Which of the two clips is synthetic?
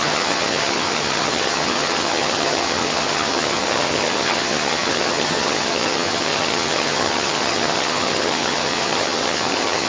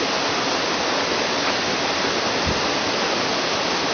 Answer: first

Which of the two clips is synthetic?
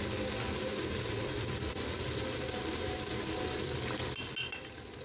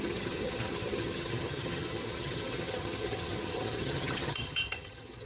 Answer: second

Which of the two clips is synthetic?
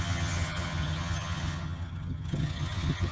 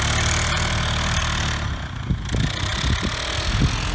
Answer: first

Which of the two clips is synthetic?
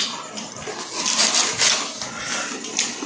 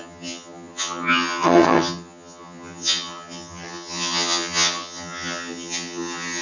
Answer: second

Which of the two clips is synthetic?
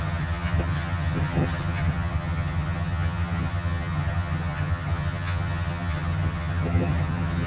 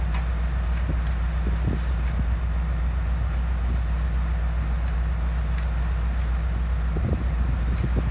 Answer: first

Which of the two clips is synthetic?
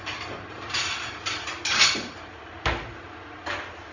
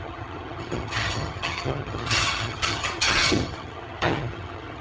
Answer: second